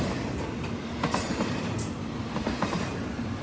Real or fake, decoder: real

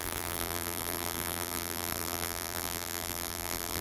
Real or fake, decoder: fake, vocoder, BigVGAN v2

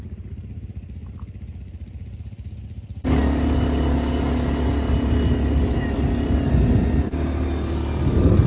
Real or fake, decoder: real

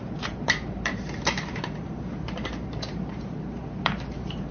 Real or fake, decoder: fake, vocoder, BigVGAN v2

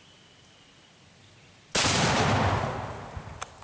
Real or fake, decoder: real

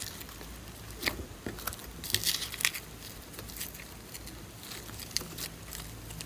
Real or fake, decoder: real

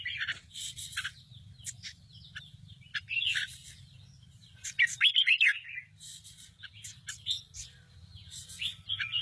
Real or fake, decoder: real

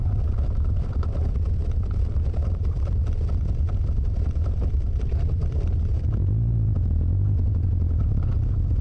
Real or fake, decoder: fake, vocoder, BigVGAN v2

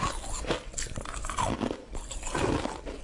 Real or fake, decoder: real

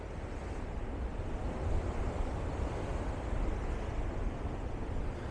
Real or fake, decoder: real